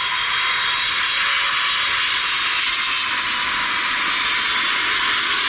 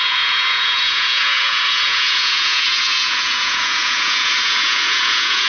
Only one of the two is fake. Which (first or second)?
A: second